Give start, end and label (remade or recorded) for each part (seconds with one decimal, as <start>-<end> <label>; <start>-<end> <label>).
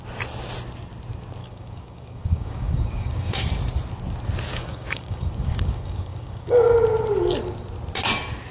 0.0-1.4 recorded; 1.4-3.5 remade; 3.5-4.5 recorded; 4.5-6.8 remade; 6.8-8.5 recorded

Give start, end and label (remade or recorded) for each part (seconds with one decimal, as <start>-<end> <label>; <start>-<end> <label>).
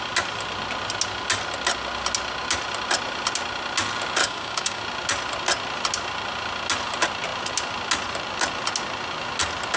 0.0-4.2 recorded; 4.2-4.8 remade; 4.8-9.8 recorded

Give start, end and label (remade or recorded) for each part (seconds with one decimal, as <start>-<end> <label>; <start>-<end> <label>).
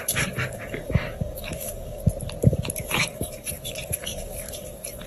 0.0-2.0 remade; 2.0-2.8 recorded; 2.8-5.1 remade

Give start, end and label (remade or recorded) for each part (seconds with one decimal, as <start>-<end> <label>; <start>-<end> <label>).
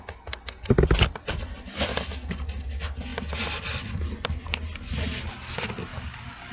0.0-5.9 recorded; 5.9-6.5 remade